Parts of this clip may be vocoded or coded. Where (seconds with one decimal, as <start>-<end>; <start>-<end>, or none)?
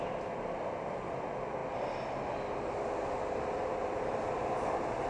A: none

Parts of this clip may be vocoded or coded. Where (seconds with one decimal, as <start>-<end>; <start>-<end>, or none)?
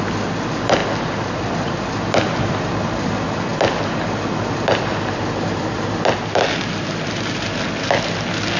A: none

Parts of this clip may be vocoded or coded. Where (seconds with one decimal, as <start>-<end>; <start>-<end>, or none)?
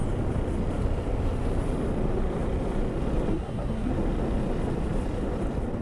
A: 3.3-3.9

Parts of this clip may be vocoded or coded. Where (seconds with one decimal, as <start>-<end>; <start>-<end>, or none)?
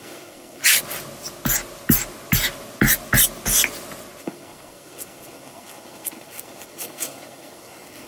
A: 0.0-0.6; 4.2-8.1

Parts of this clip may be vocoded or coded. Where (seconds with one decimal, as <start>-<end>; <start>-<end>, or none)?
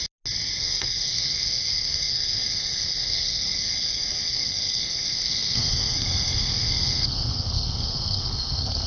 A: 0.6-8.9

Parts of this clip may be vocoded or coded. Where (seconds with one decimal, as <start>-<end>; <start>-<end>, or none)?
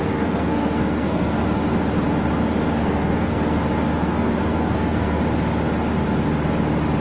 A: 0.0-1.4; 2.8-5.2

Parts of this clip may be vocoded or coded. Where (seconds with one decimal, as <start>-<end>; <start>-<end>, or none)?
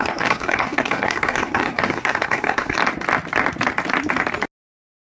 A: 0.0-2.8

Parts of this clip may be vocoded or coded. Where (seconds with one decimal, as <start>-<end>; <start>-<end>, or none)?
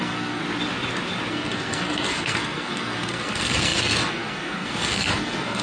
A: 0.0-0.4; 1.3-5.6